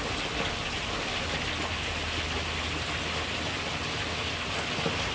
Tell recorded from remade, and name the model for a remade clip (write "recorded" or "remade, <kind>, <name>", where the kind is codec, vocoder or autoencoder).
recorded